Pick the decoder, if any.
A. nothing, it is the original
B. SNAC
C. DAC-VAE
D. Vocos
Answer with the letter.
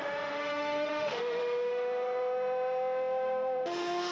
C